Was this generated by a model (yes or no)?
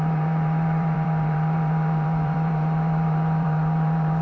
yes